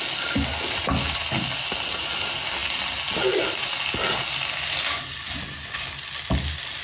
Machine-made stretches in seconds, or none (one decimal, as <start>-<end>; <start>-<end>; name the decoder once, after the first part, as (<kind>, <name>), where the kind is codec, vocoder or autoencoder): none